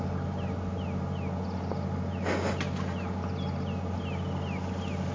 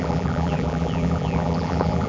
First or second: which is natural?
first